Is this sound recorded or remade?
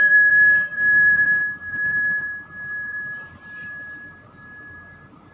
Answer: remade